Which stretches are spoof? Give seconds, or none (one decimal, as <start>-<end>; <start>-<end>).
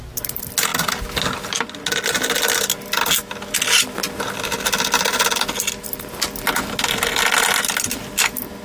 none